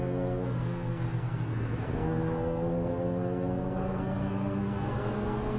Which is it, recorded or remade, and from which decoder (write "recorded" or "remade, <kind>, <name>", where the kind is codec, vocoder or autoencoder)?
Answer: remade, codec, SNAC